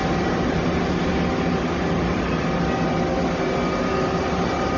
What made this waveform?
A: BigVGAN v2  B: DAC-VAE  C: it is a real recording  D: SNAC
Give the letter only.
C